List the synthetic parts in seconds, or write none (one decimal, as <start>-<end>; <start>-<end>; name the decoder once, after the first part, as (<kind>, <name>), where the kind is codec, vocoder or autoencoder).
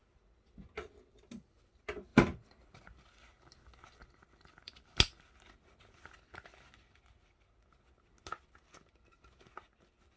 2.1-3.4 (vocoder, BigVGAN v2); 4.0-4.7